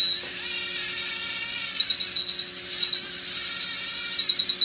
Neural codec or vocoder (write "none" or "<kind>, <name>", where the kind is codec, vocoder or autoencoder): none